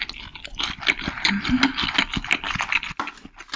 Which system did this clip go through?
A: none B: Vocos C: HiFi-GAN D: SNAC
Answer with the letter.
A